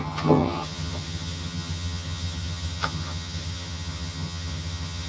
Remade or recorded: remade